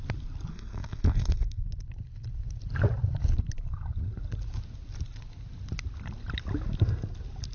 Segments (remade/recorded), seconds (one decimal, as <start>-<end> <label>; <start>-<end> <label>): 0.0-0.5 recorded; 0.5-1.6 remade; 1.6-7.5 recorded